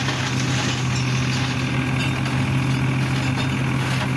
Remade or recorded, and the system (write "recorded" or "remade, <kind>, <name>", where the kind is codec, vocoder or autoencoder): recorded